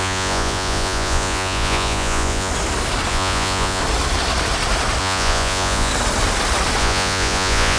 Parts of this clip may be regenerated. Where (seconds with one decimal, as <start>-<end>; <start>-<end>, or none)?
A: 0.0-2.5; 3.1-3.8; 5.0-5.9; 6.8-7.8